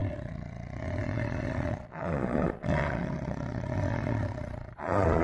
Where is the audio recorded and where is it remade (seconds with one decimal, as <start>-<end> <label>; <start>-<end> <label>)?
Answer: 0.0-5.2 remade